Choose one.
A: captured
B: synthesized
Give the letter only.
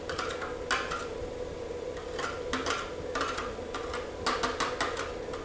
A